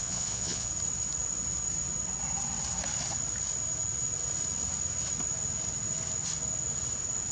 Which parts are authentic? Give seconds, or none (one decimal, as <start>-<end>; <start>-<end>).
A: 0.7-7.3

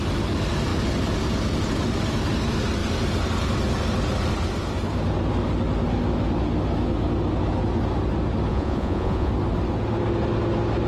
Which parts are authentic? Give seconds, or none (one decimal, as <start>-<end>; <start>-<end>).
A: 0.0-8.5; 9.3-10.9

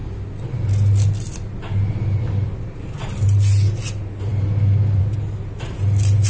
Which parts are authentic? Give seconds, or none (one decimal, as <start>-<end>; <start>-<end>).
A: 0.0-6.3